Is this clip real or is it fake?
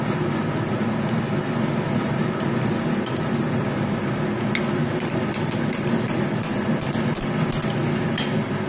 real